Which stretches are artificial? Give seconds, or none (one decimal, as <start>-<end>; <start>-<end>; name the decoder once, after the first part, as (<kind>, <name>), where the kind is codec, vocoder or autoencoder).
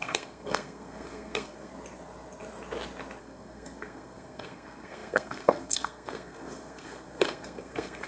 0.0-1.7 (codec, SNAC); 3.2-8.1